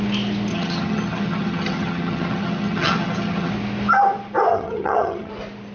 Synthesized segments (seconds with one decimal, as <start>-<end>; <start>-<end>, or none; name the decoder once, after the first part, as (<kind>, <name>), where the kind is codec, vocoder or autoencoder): 0.5-3.5 (vocoder, HiFi-GAN); 4.5-5.3